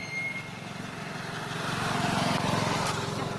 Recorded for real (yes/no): yes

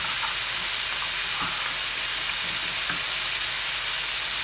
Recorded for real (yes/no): yes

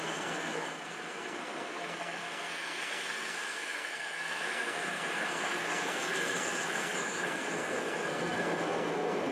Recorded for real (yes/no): no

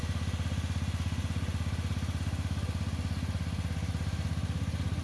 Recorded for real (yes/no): yes